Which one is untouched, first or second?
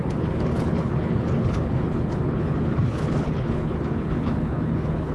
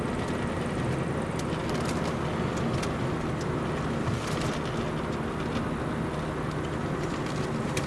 second